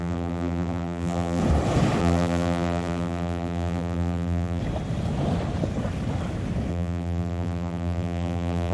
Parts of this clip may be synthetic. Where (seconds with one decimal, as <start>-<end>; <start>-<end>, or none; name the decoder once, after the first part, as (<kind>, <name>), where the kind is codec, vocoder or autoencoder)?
0.0-1.4 (vocoder, BigVGAN v2); 2.0-4.6; 6.7-8.7